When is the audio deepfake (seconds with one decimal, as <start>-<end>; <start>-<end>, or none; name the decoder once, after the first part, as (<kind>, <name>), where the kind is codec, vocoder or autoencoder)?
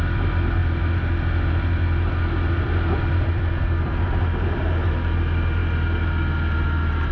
none